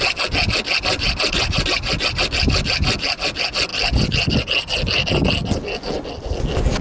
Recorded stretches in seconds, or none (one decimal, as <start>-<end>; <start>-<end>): 0.0-6.8